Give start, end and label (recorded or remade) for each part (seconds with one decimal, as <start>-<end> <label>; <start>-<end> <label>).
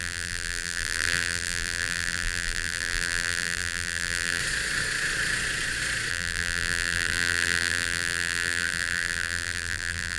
0.0-4.4 remade; 4.4-6.1 recorded; 6.1-10.2 remade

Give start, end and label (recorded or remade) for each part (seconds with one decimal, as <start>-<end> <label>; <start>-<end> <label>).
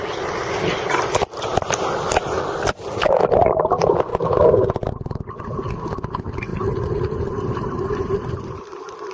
0.0-6.5 recorded; 6.5-8.6 remade; 8.6-9.1 recorded